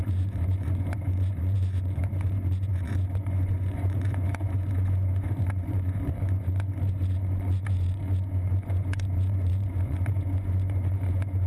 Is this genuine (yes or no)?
no